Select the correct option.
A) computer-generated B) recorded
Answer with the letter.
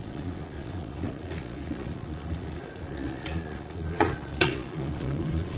A